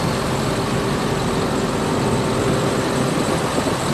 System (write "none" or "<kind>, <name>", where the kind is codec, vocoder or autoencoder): none